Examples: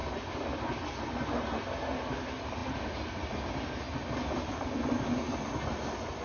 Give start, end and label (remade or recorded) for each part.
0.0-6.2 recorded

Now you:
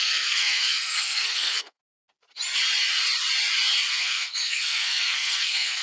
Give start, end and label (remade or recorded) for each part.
0.0-1.8 remade; 1.8-3.9 recorded; 3.9-5.8 remade

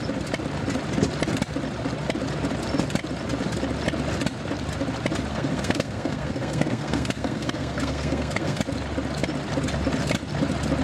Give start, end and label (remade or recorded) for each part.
0.0-5.3 recorded; 5.3-8.6 remade; 8.6-10.8 recorded

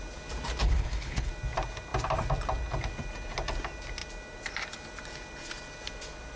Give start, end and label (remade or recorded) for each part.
0.0-0.6 recorded; 0.6-1.3 remade; 1.3-6.4 recorded